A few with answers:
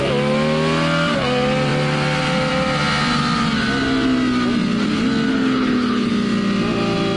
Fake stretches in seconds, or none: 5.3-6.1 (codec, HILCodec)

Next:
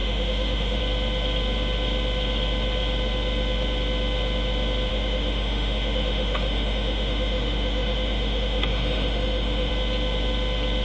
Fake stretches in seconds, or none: 0.0-0.8 (autoencoder, DAC-VAE); 4.9-9.7